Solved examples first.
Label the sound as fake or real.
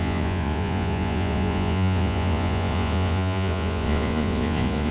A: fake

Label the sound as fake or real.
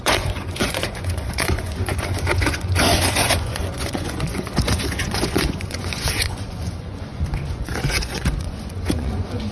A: fake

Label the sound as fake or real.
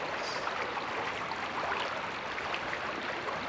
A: real